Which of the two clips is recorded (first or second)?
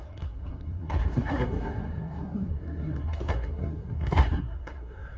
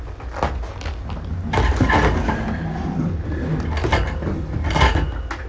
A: second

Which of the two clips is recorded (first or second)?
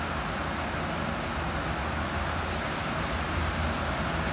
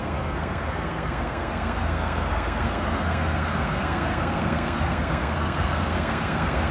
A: first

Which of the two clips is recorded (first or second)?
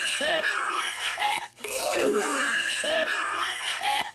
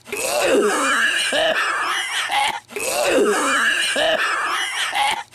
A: second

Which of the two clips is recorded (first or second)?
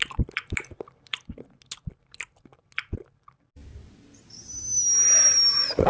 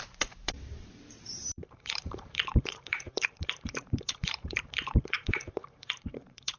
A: first